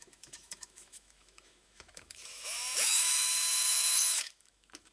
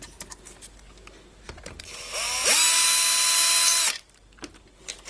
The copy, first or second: first